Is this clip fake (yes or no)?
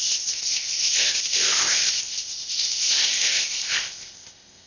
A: yes